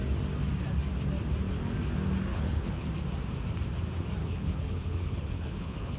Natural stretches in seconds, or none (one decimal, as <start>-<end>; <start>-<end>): 0.0-2.3; 2.9-4.2